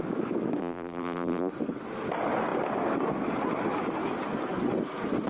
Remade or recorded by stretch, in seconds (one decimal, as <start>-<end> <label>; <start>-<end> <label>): 0.0-0.6 recorded; 0.6-1.5 remade; 1.5-5.3 recorded